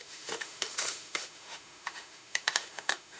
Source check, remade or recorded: remade